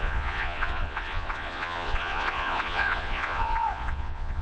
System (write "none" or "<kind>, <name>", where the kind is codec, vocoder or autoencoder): vocoder, Vocos